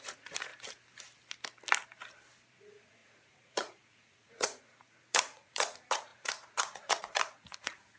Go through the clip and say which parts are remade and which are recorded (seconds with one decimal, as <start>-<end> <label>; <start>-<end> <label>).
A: 0.0-0.5 remade; 0.5-2.5 recorded; 2.5-8.0 remade